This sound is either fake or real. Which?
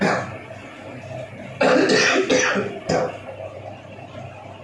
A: real